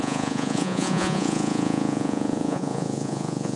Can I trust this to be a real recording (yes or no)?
no